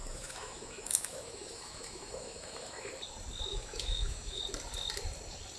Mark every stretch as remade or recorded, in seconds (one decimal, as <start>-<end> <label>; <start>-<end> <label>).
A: 0.0-2.9 remade; 2.9-3.5 recorded; 3.5-4.4 remade; 4.4-5.6 recorded